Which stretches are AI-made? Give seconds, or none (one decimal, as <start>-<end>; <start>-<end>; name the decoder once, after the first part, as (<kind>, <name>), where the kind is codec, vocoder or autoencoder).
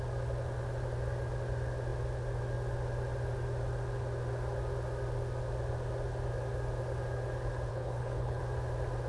7.7-8.4 (codec, HILCodec)